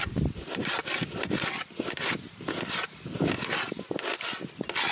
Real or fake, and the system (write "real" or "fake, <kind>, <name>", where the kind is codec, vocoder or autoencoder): fake, vocoder, BigVGAN v2